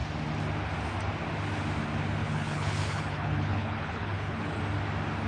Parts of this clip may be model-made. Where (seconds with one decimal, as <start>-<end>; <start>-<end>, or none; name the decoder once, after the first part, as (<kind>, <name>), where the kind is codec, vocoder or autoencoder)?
2.2-4.6 (codec, HILCodec)